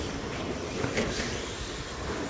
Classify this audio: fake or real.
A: real